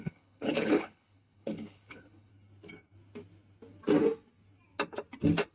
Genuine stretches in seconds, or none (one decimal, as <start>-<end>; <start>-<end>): 2.3-5.5